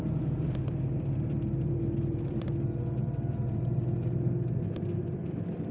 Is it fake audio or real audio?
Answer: fake